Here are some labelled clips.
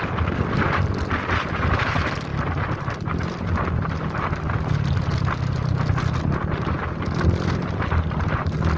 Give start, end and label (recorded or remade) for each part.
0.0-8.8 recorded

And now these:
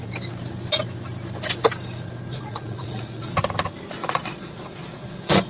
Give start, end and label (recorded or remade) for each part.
0.0-2.3 recorded; 2.3-3.3 remade; 3.3-4.0 recorded; 4.0-5.5 remade

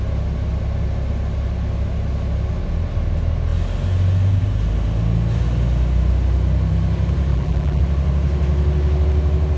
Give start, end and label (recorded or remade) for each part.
0.0-7.3 recorded; 7.3-7.8 remade; 7.8-9.6 recorded

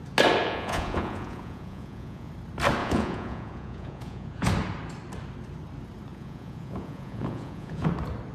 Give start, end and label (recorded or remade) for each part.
0.0-0.4 recorded; 0.4-2.3 remade; 2.3-2.8 recorded; 2.8-4.5 remade; 4.5-6.1 recorded; 6.1-7.9 remade; 7.9-8.3 recorded

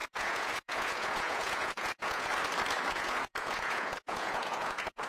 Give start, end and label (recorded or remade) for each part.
0.0-2.3 remade; 2.3-2.9 recorded; 2.9-5.1 remade